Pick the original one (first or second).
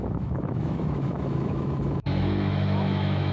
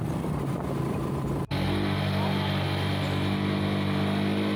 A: second